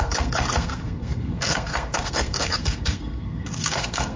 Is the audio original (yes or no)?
no